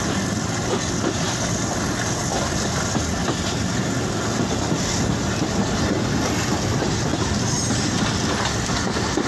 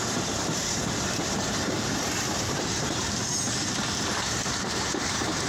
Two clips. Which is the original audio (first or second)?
first